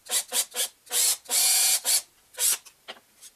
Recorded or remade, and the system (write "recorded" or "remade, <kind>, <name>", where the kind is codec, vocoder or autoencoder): recorded